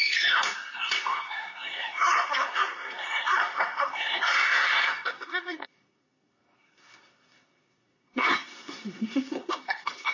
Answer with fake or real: fake